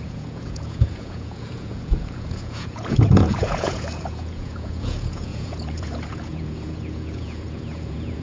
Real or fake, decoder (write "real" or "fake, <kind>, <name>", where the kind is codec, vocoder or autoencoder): fake, vocoder, Vocos